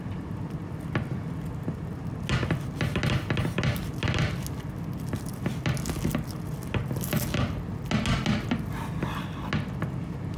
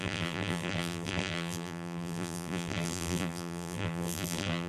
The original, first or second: first